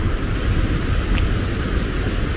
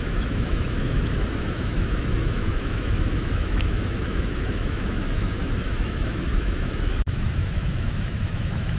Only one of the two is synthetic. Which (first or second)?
second